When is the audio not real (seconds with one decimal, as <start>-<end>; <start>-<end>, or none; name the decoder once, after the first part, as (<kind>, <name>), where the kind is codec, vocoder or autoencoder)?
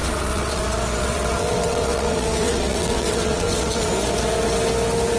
0.0-0.6 (vocoder, WaveNeXt); 1.0-3.9